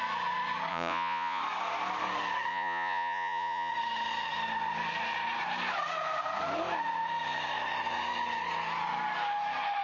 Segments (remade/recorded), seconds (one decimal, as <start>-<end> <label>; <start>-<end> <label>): 0.0-0.7 recorded; 0.7-1.4 remade; 1.4-2.5 recorded; 2.5-3.7 remade; 3.7-9.8 recorded